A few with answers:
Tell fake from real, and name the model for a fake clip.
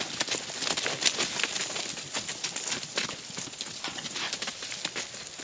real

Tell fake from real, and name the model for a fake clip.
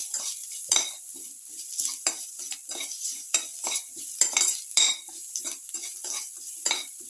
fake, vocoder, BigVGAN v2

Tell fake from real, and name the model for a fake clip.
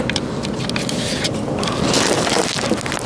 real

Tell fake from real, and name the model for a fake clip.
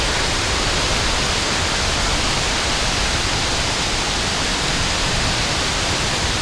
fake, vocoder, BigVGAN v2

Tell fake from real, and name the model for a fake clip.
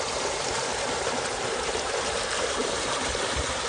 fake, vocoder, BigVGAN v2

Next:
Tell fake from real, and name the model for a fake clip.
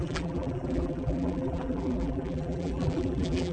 fake, vocoder, BigVGAN v2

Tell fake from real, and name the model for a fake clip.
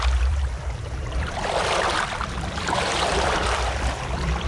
fake, vocoder, BigVGAN v2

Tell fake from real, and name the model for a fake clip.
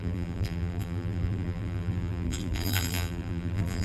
fake, vocoder, BigVGAN v2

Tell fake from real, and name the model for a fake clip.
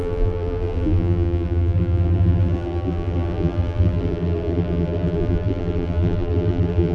fake, vocoder, BigVGAN v2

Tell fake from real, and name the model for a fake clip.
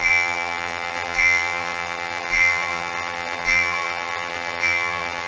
fake, vocoder, BigVGAN v2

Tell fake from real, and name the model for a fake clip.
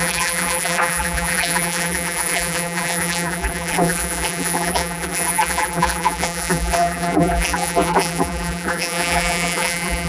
fake, vocoder, BigVGAN v2